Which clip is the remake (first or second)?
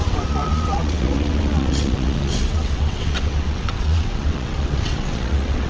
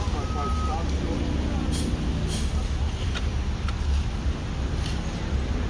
first